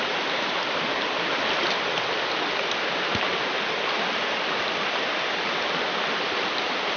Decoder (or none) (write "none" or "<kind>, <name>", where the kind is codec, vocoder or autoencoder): none